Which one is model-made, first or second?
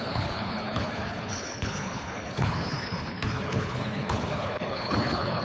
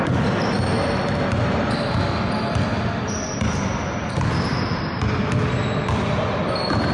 first